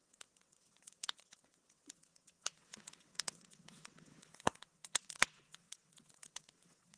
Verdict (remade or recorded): remade